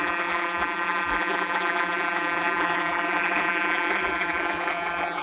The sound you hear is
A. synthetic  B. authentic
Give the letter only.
A